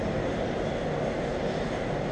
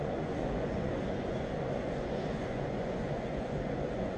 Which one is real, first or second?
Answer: first